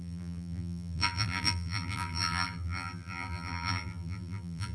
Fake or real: fake